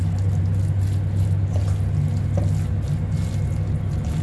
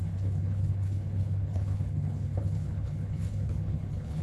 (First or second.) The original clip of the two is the first